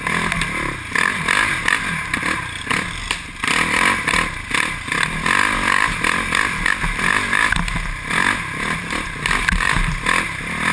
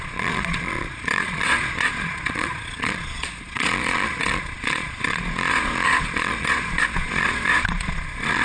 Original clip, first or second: first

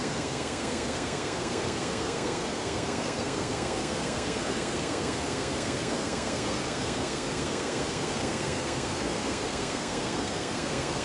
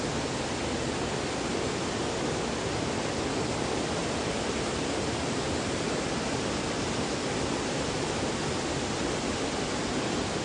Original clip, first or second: second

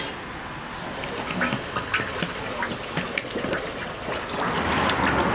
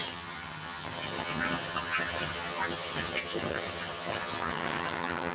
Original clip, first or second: first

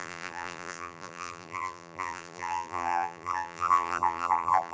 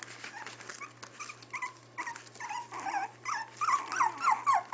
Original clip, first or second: second